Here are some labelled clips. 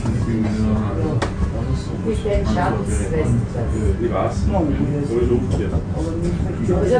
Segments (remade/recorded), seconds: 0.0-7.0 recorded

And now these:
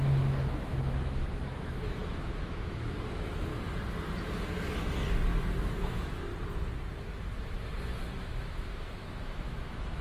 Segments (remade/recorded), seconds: 0.0-3.5 remade; 3.5-5.6 recorded; 5.6-6.3 remade; 6.3-8.3 recorded; 8.3-10.0 remade

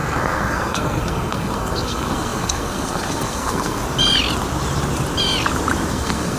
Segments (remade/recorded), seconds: 0.0-3.8 remade; 3.8-5.9 recorded; 5.9-6.4 remade

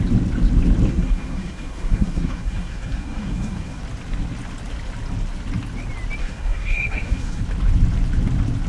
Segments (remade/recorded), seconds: 0.0-0.9 recorded; 0.9-3.8 remade; 3.8-6.2 recorded; 6.2-7.4 remade; 7.4-8.7 recorded